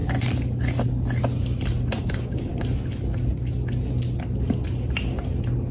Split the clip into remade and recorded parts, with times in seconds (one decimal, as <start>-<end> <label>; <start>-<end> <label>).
0.0-2.0 recorded; 2.0-2.5 remade; 2.5-5.7 recorded